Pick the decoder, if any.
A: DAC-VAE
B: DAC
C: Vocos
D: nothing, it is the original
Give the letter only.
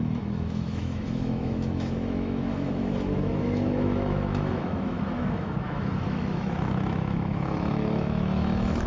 A